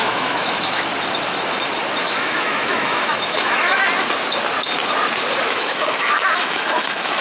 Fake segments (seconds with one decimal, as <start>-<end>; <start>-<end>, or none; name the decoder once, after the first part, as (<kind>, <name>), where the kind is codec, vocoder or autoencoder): 0.0-0.9 (autoencoder, DAC-VAE); 2.0-3.8; 5.5-7.2